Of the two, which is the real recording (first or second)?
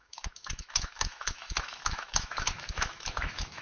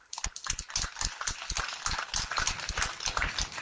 second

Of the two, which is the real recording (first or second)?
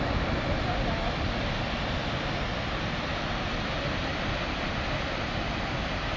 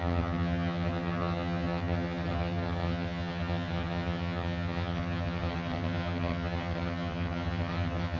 first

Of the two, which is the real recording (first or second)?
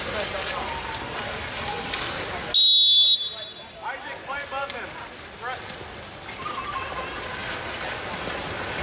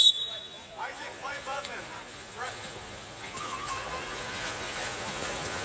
first